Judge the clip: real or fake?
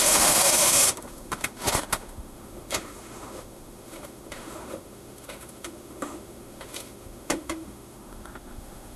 fake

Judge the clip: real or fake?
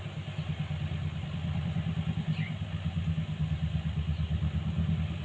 real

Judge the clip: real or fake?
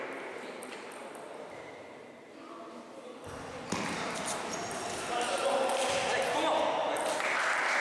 real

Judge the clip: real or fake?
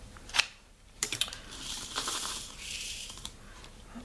fake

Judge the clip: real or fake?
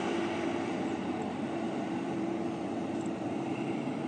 fake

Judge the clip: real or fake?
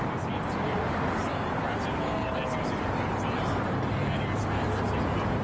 real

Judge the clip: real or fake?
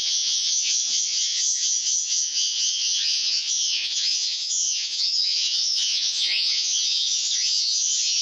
fake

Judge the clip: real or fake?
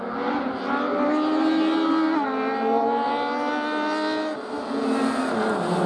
real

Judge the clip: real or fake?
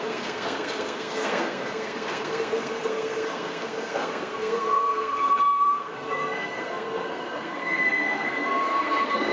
fake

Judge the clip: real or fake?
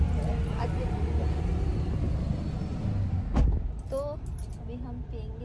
real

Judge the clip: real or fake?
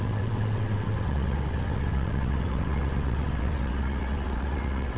fake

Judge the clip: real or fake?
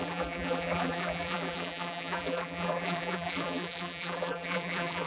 fake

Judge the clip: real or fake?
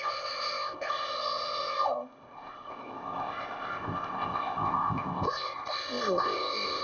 fake